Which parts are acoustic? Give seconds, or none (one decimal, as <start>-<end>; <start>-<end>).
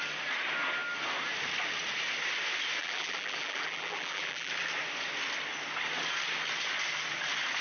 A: 0.0-2.8; 4.5-7.6